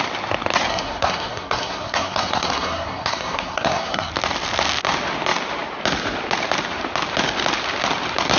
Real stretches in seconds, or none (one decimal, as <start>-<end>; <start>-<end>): 0.0-0.7; 4.1-8.4